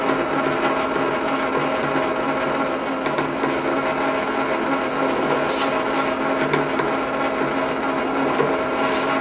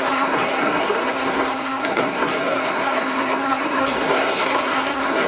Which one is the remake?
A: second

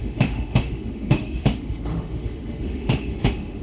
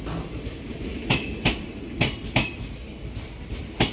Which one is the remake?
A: first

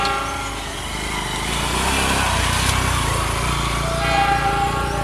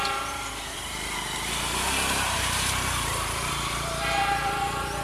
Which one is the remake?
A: second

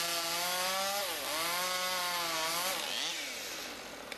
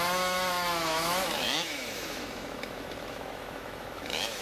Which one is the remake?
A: second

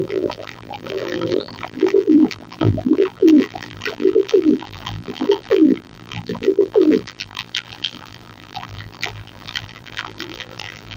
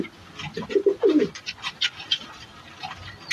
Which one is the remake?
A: first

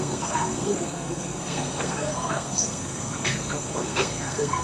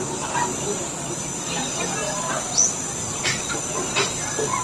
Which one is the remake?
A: first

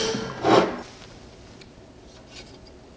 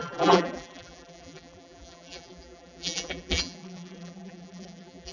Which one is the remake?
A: second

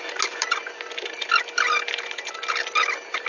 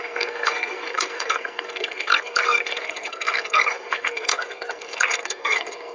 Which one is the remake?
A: second